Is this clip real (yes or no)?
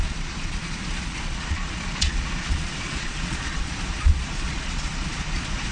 no